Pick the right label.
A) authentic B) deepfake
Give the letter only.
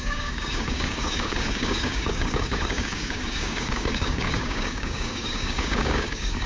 B